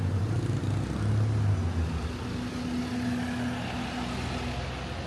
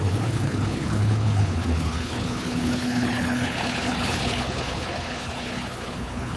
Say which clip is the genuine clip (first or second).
first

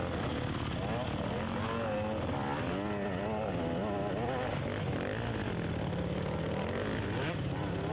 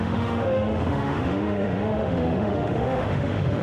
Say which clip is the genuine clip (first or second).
first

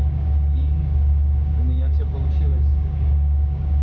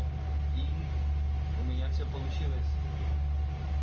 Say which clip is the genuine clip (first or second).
second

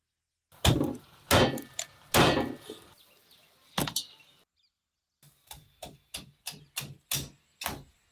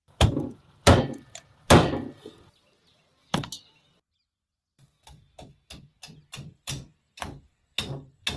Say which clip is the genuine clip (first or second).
first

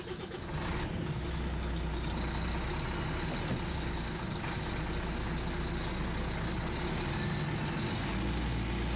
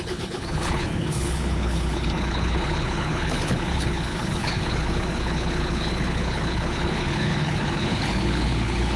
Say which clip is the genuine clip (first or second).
first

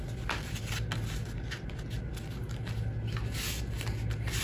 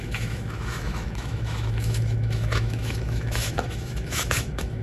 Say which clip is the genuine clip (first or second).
first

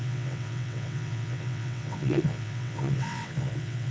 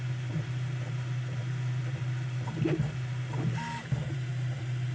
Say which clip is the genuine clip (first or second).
second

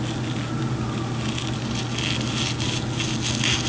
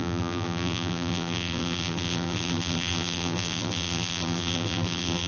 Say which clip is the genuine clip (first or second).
first